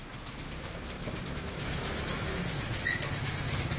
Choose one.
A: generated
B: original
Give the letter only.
A